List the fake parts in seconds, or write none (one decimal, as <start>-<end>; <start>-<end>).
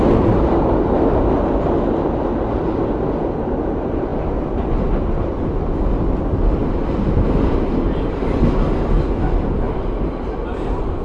none